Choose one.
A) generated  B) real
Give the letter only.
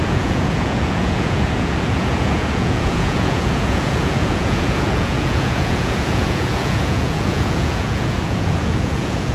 A